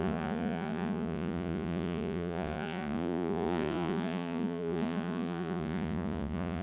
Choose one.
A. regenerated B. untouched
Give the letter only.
A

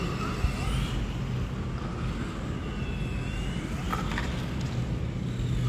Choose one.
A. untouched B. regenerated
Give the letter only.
A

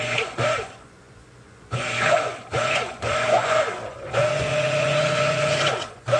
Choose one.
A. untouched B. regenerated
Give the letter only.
B